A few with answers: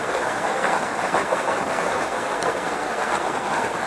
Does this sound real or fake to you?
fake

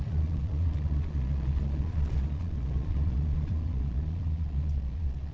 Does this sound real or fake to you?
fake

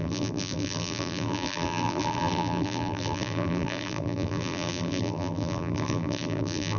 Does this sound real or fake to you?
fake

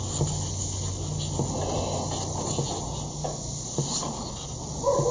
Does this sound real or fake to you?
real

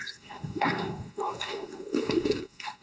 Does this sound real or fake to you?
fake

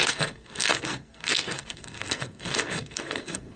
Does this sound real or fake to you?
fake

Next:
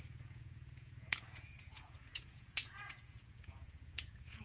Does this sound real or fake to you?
fake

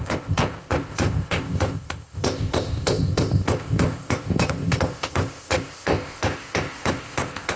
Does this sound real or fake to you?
fake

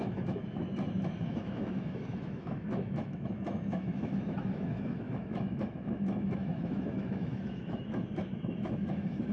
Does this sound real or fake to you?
fake